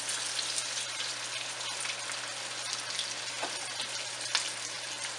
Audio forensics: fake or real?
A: real